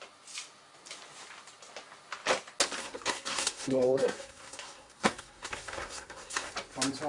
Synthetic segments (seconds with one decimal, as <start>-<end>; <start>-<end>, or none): 2.8-6.5